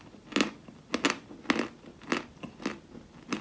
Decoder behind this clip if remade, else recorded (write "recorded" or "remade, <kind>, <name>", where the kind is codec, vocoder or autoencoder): recorded